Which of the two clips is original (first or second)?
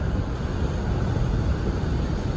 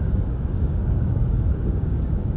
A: first